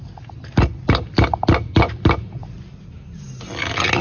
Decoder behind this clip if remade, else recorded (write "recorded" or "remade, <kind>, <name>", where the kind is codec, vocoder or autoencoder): recorded